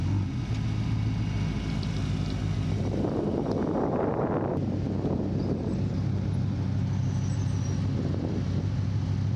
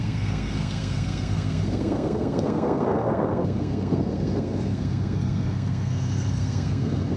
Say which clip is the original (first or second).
first